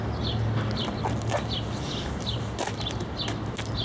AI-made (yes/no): no